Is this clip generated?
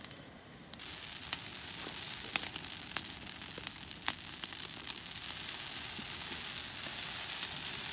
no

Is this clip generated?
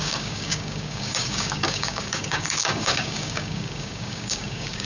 yes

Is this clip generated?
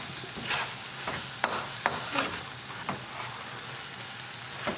no